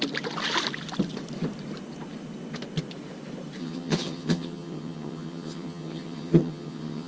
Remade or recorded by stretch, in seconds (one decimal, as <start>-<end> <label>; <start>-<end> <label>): 0.0-3.6 recorded; 3.6-7.1 remade

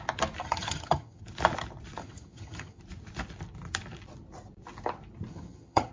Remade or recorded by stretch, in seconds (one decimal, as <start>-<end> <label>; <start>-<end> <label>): 0.0-0.4 recorded; 0.4-1.2 remade; 1.2-2.0 recorded; 2.0-2.8 remade; 2.8-5.3 recorded; 5.3-5.9 remade